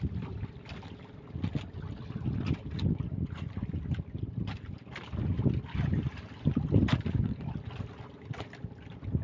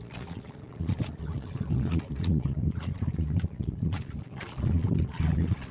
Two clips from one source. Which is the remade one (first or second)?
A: second